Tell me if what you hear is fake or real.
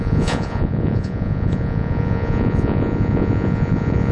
fake